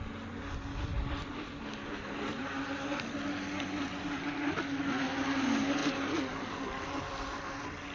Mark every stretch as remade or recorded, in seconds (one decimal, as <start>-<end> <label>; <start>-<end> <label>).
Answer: 0.0-7.9 recorded